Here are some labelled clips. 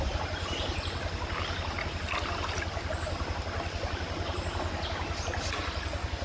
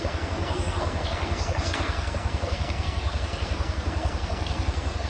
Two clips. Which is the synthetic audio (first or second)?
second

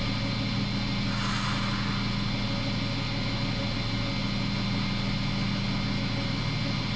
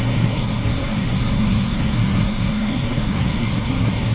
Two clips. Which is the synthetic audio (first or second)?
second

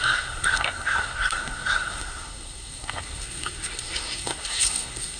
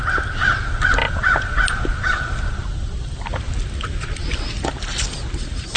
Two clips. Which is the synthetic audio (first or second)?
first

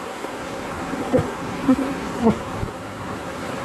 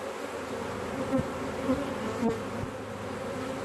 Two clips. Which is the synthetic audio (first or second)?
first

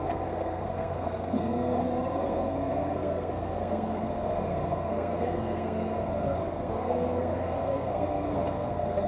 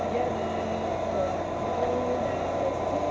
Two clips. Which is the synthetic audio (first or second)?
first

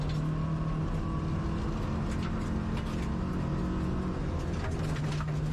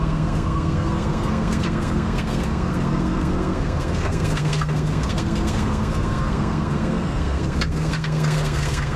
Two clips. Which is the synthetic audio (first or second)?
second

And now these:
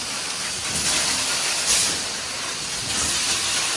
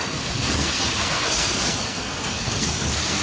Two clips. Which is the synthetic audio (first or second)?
second